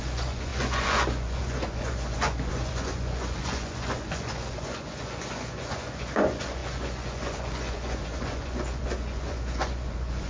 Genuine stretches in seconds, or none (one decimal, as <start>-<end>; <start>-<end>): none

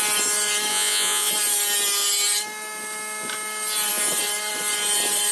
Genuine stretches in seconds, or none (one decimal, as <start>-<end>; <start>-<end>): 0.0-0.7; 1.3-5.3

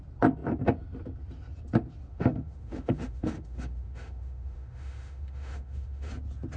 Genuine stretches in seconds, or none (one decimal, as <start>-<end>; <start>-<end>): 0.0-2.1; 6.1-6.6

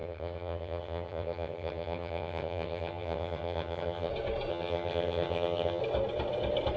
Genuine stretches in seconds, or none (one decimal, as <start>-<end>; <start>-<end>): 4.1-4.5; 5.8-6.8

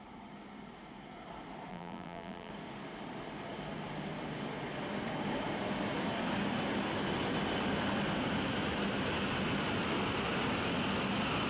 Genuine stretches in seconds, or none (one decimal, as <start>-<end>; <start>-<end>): 0.0-1.7; 2.5-11.5

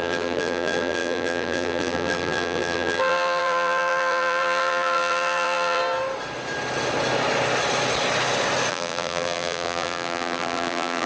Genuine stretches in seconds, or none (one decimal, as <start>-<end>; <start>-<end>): 5.8-8.7

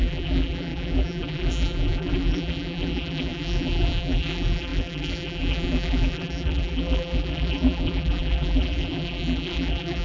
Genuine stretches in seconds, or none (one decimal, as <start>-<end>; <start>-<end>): none

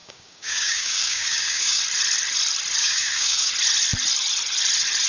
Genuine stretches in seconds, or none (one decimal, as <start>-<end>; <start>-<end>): 1.8-2.8; 3.5-5.1